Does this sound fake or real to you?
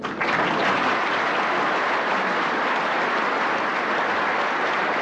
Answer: real